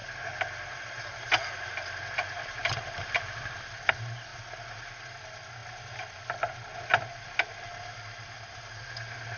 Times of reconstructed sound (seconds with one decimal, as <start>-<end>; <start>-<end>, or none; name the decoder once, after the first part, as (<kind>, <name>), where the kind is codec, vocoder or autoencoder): none